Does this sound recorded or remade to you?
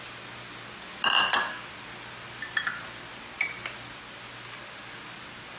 recorded